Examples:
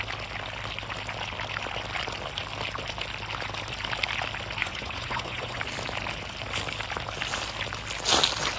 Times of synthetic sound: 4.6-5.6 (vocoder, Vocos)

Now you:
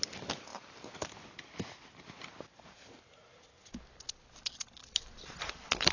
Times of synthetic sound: none